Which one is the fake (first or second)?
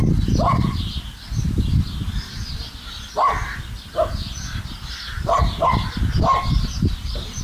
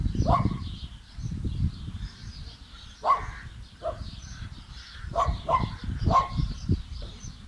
second